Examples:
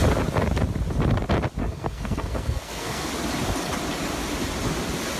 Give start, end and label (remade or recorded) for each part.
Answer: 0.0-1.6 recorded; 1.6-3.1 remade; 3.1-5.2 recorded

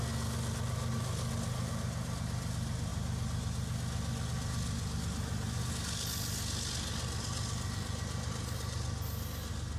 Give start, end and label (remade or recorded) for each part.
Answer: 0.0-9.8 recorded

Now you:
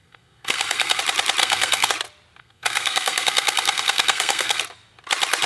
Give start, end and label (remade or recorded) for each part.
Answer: 0.0-1.0 remade; 1.0-1.4 recorded; 1.4-1.9 remade; 1.9-2.4 recorded; 2.4-4.6 remade; 4.6-5.5 recorded